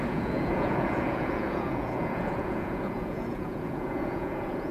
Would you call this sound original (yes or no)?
no